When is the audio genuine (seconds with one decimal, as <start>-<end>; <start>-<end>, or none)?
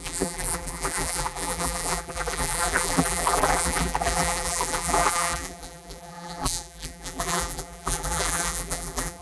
none